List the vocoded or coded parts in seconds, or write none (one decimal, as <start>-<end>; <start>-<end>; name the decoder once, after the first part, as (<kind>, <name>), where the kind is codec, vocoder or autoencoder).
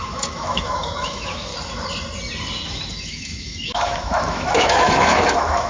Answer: 0.0-1.5 (autoencoder, DAC-VAE); 3.1-5.7